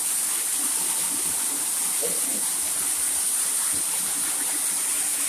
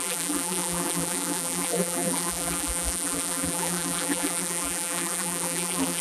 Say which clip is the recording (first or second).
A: first